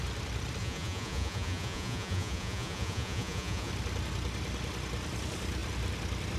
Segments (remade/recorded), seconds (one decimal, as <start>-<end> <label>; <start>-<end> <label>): 0.0-0.6 recorded; 0.6-3.7 remade; 3.7-6.4 recorded